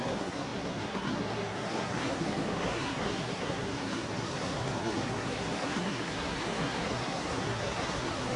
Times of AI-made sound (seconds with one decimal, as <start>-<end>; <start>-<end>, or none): 0.0-8.4